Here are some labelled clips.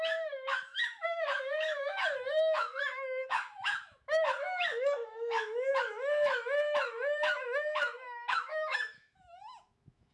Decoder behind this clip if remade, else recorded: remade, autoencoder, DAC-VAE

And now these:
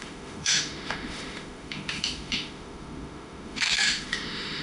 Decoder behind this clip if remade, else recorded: remade, autoencoder, DAC-VAE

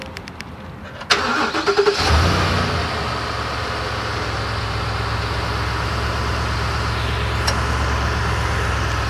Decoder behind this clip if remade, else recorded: recorded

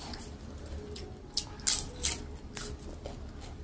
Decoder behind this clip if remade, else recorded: recorded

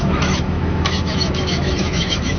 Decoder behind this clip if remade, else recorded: remade, autoencoder, DAC-VAE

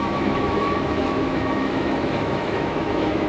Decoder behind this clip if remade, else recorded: remade, autoencoder, DAC-VAE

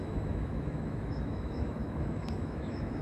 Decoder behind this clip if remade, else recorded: remade, autoencoder, DAC-VAE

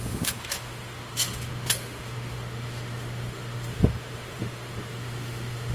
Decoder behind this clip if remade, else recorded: remade, autoencoder, DAC-VAE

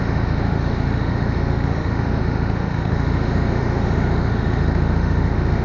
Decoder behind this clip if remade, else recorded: remade, autoencoder, DAC-VAE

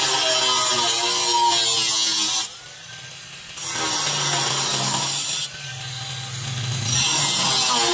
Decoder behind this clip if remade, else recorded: recorded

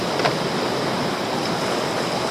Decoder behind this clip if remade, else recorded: recorded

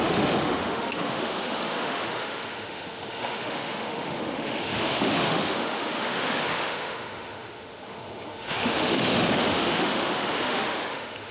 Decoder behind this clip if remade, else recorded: remade, autoencoder, DAC-VAE